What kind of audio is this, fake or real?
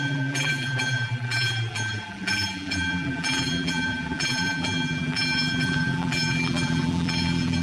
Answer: fake